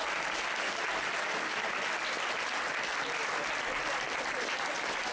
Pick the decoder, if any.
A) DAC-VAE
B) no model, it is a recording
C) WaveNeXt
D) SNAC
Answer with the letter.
B